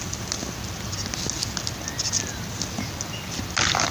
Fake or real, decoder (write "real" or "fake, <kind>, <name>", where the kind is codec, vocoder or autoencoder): real